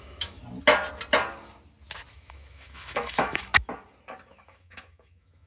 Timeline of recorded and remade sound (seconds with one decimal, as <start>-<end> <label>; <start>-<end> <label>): 0.0-0.4 remade; 0.4-2.1 recorded; 2.1-3.5 remade; 3.5-4.3 recorded; 4.3-5.5 remade